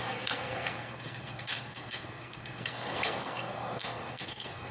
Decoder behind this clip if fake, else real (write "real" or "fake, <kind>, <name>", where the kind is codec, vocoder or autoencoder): fake, codec, SNAC